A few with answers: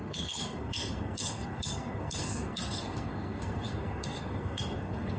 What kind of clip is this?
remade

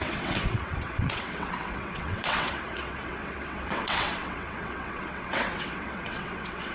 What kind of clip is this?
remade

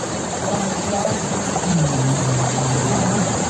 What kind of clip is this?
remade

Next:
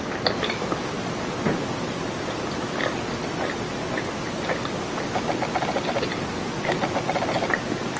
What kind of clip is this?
recorded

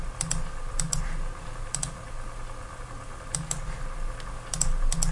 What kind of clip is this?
recorded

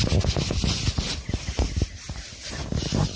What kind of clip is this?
recorded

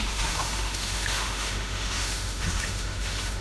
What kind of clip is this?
remade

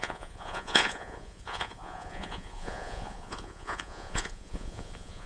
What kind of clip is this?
remade